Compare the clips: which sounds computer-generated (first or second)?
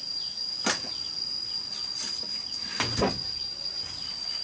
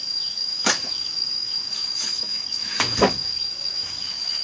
second